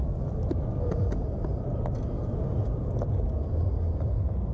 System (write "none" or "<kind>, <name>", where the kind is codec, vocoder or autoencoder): vocoder, BigVGAN v2